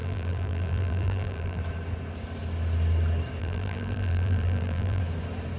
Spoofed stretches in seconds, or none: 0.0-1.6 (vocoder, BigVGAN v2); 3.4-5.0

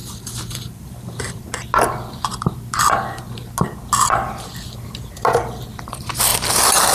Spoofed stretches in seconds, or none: 0.0-1.4 (vocoder, BigVGAN v2)